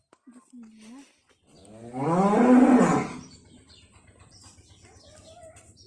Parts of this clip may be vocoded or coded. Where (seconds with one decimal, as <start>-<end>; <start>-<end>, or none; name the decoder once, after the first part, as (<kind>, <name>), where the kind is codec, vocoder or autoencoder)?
none